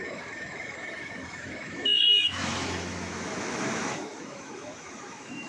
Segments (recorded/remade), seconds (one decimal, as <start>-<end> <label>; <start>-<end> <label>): 0.0-5.5 remade